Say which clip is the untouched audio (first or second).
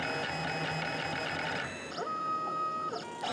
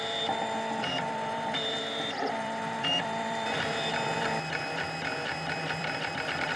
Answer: first